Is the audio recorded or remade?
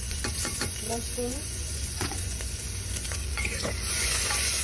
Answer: remade